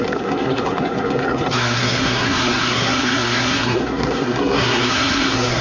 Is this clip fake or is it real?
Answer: fake